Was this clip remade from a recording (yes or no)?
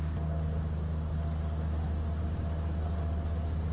no